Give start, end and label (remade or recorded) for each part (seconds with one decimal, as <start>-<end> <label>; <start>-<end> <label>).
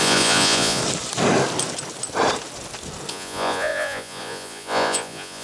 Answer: 0.0-0.8 remade; 0.8-3.1 recorded; 3.1-5.4 remade